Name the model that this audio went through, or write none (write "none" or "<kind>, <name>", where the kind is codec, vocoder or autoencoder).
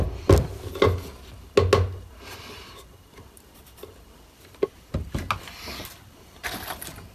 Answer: none